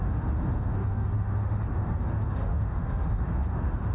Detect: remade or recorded remade